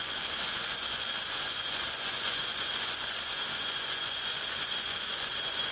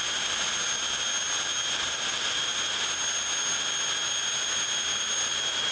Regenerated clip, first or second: first